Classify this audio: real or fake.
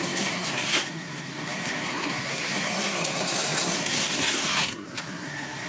fake